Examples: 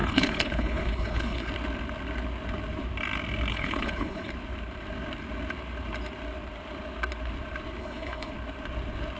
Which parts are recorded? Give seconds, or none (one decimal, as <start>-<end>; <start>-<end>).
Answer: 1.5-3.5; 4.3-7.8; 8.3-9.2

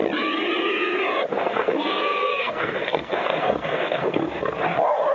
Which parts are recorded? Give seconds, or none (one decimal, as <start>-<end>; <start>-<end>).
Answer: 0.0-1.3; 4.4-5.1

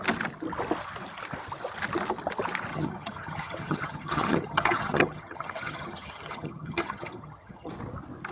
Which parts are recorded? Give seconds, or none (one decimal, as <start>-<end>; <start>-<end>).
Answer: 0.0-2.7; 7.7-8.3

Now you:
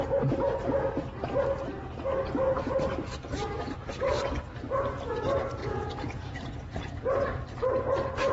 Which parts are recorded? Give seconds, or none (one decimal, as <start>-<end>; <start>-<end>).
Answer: 0.0-5.6; 7.1-8.3

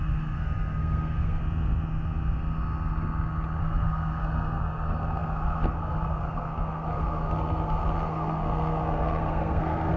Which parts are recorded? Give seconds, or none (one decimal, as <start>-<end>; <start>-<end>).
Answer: 1.4-3.6